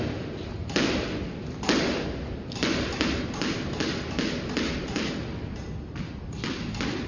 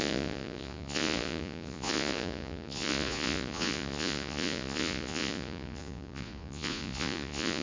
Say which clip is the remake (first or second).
second